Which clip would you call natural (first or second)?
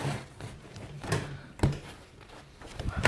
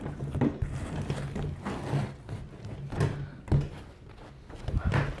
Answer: second